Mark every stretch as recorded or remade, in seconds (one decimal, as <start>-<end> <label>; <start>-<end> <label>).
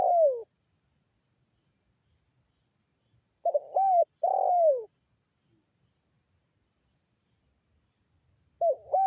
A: 0.0-9.1 recorded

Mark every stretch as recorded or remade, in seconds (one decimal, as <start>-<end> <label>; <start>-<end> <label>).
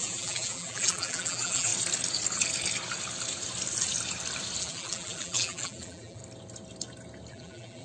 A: 0.0-1.7 remade; 1.7-4.6 recorded; 4.6-6.2 remade; 6.2-7.3 recorded; 7.3-7.8 remade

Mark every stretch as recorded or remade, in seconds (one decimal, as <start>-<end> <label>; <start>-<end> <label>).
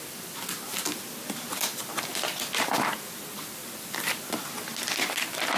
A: 0.0-1.7 recorded; 1.7-5.1 remade; 5.1-5.6 recorded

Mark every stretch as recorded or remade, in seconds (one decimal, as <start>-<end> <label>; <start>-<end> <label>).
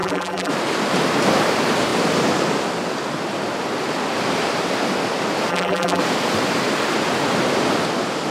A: 0.0-0.5 remade; 0.5-5.5 recorded; 5.5-6.0 remade; 6.0-8.3 recorded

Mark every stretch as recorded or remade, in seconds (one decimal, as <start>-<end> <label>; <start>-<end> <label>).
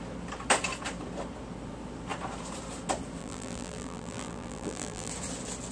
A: 0.0-3.2 recorded; 3.2-5.1 remade; 5.1-5.7 recorded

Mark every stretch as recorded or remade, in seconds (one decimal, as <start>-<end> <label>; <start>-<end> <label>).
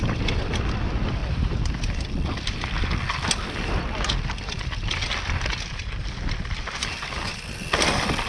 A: 0.0-1.2 recorded; 1.2-3.3 remade; 3.3-8.3 recorded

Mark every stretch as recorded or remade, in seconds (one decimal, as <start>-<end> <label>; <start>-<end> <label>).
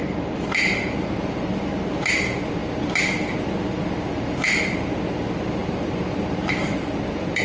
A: 0.0-0.8 recorded; 0.8-1.8 remade; 1.8-2.6 recorded; 2.6-4.9 remade; 4.9-5.6 recorded; 5.6-7.4 remade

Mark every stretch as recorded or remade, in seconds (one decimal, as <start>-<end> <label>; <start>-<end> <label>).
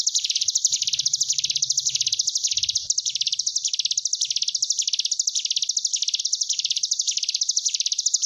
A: 0.0-3.5 remade; 3.5-6.2 recorded; 6.2-8.3 remade